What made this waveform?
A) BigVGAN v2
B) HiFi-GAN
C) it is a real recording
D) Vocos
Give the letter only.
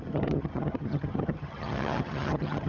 B